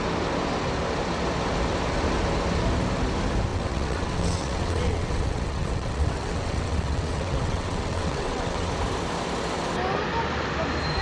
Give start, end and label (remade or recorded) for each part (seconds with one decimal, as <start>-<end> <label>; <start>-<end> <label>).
0.0-3.5 recorded; 3.5-8.7 remade; 8.7-11.0 recorded